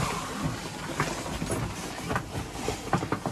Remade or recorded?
recorded